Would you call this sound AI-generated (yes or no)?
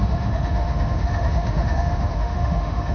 yes